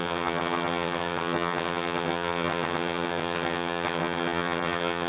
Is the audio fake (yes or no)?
yes